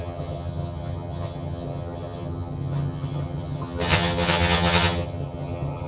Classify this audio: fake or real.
fake